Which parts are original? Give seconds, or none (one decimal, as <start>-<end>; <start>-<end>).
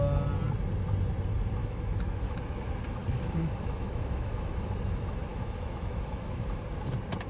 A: 0.0-1.6; 2.4-3.0; 4.7-5.3; 6.6-7.3